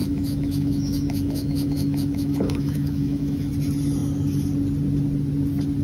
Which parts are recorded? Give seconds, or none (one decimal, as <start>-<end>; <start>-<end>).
3.5-5.8